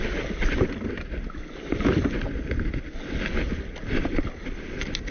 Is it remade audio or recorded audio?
recorded